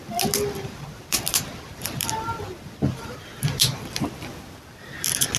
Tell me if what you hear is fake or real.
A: fake